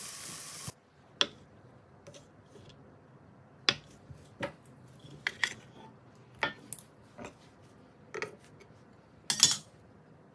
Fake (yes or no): no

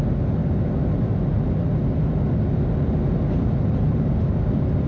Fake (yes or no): no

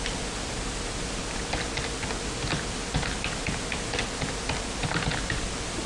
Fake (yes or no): no